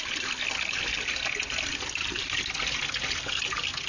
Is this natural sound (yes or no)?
yes